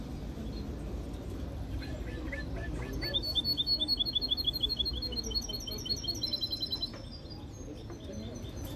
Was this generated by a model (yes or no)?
no